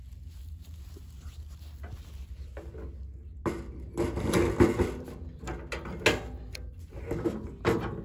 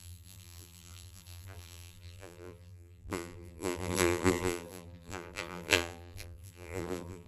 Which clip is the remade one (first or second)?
second